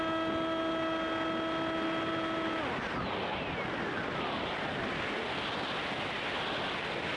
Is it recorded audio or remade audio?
recorded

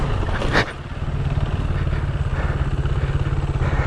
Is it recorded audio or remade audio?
recorded